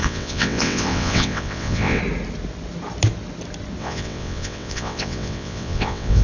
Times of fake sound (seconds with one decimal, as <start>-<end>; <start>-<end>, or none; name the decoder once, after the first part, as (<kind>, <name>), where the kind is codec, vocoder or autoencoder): 0.0-2.0 (vocoder, WaveNeXt); 3.8-6.2